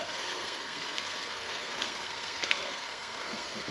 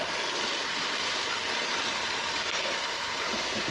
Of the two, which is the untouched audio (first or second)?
second